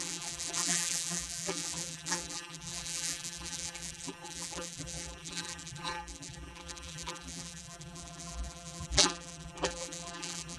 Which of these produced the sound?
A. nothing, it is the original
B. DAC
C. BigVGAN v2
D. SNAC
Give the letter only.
C